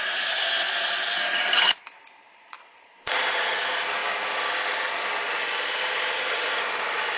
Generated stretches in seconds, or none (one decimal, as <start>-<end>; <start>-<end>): 1.2-3.3